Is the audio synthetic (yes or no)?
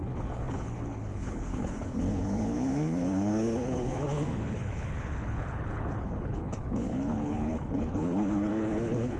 yes